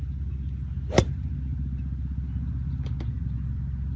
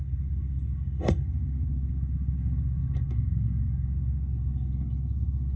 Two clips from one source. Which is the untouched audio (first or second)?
first